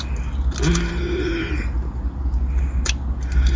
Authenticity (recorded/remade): recorded